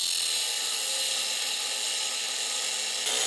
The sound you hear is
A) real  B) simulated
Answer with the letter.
A